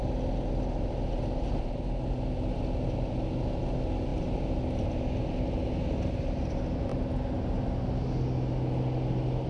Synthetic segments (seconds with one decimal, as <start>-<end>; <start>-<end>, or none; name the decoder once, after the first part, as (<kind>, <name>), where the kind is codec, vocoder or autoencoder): none